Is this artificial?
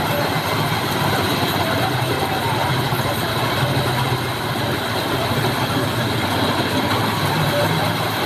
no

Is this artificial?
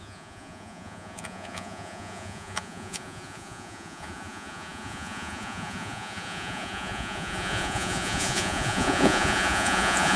yes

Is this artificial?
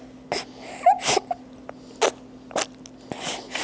no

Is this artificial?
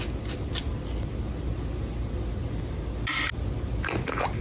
no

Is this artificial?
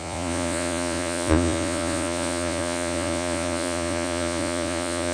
yes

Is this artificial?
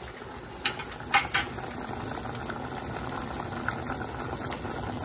no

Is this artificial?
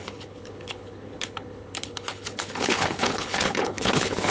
yes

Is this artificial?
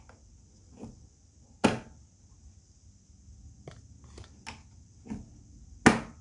no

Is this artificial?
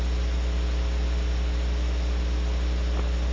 no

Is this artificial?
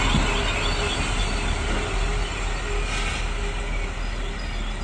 no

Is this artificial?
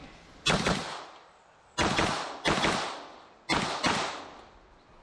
no